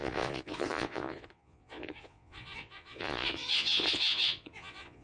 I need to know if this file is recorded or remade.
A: remade